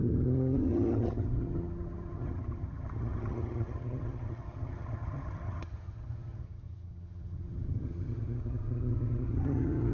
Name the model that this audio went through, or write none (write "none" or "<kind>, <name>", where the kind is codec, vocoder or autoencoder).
vocoder, HiFi-GAN